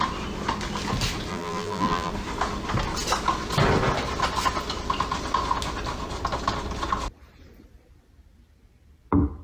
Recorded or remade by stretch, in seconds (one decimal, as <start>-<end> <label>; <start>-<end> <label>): 0.0-1.3 recorded; 1.3-2.1 remade; 2.1-9.4 recorded